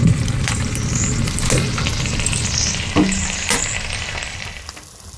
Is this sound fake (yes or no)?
no